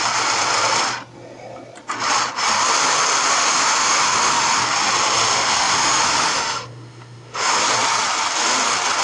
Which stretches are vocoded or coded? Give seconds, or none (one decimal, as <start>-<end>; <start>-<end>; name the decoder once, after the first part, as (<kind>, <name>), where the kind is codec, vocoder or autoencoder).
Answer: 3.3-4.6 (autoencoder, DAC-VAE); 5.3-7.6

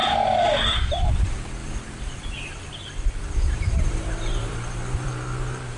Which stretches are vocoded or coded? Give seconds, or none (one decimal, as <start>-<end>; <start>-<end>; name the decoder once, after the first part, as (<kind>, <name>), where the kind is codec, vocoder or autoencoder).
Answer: 1.6-5.1 (vocoder, BigVGAN v2)

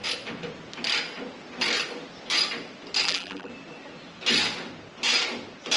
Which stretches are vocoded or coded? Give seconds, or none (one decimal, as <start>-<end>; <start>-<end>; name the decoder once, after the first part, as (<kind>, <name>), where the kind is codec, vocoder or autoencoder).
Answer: 3.0-3.5 (vocoder, BigVGAN v2)

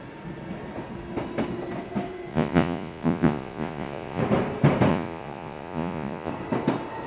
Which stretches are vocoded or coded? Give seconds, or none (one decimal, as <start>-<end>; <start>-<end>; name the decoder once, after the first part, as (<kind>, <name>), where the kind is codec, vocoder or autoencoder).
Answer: 2.3-4.2 (vocoder, Vocos); 4.9-6.3

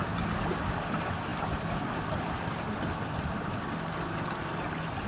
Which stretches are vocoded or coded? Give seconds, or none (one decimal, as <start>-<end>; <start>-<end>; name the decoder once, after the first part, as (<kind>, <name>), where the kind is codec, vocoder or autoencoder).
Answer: none

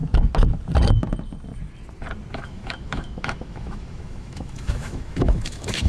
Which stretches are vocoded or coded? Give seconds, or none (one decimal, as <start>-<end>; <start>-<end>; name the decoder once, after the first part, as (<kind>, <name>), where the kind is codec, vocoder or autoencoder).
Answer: 2.3-5.9 (autoencoder, DAC-VAE)

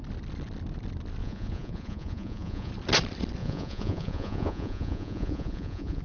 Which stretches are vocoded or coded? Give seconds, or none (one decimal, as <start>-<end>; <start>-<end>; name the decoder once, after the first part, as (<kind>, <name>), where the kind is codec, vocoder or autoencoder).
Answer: 1.2-2.7 (vocoder, Vocos); 3.4-6.0